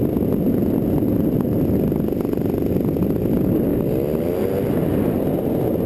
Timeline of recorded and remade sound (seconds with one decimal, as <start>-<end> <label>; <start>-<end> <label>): 0.0-5.9 recorded

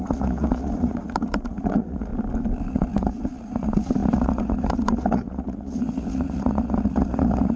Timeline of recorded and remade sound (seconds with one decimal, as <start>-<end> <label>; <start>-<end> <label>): 0.0-2.1 remade; 2.1-2.7 recorded; 2.7-7.6 remade

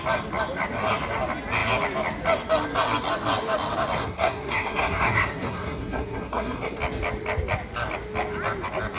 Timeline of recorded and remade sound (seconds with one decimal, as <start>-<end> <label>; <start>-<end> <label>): 0.0-4.0 recorded; 4.0-6.8 remade; 6.8-9.0 recorded

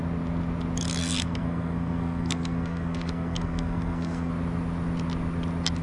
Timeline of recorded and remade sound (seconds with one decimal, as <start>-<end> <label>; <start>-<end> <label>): 0.0-1.0 recorded; 1.0-4.3 remade; 4.3-5.8 recorded

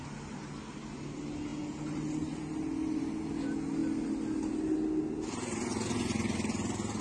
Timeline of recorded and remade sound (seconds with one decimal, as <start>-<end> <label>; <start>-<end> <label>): 0.0-7.0 recorded

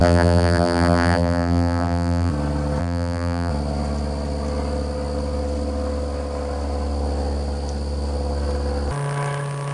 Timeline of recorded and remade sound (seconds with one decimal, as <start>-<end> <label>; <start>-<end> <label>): 0.0-2.3 remade; 2.3-2.8 recorded; 2.8-3.5 remade; 3.5-9.7 recorded